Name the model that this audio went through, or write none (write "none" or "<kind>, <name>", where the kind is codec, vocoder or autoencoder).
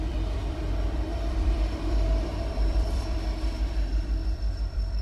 vocoder, BigVGAN v2